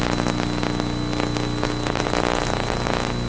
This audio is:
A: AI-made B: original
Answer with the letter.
B